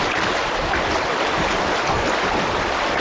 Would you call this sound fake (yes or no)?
no